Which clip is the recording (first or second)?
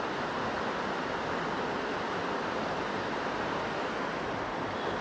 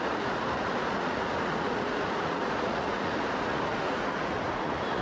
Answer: first